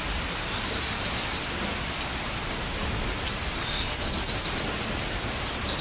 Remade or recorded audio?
recorded